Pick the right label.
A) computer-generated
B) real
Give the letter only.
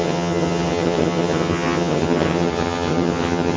A